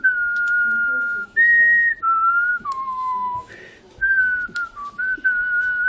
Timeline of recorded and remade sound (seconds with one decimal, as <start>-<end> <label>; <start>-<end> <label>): 0.0-0.9 recorded; 0.9-1.9 remade; 1.9-2.5 recorded; 2.5-3.5 remade; 3.5-5.9 recorded